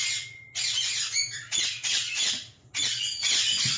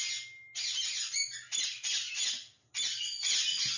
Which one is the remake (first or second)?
first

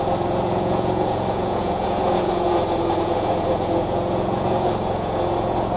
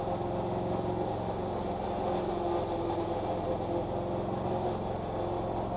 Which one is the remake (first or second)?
first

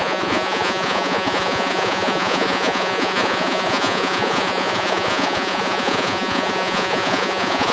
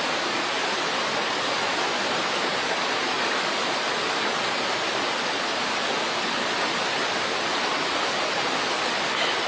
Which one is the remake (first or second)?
first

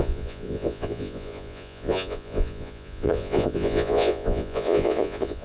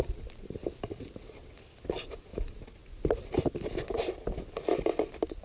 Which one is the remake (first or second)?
first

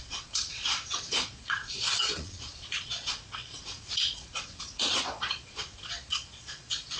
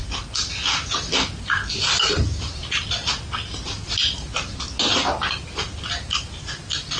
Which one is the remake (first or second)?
first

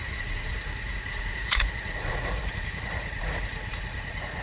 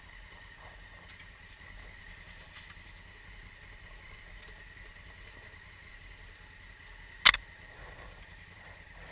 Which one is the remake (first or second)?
first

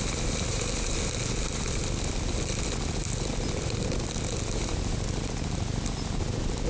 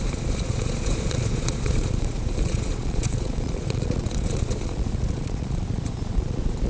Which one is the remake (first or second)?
second